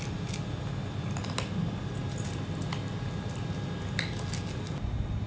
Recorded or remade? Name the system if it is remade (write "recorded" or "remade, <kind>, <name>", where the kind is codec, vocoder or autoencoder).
recorded